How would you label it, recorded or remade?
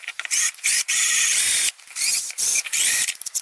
remade